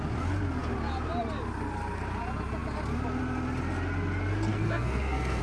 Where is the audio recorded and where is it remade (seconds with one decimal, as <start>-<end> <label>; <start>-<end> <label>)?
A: 0.0-4.5 recorded; 4.5-5.4 remade